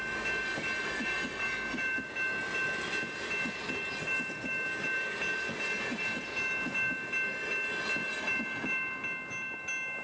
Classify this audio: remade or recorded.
recorded